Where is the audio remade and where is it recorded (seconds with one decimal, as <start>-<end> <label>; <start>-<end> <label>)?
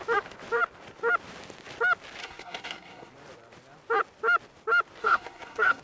0.0-2.2 recorded; 2.2-3.1 remade; 3.1-5.0 recorded; 5.0-5.8 remade